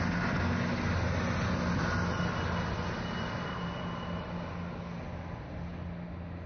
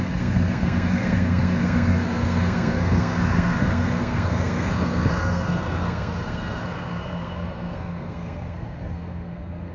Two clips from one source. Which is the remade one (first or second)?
second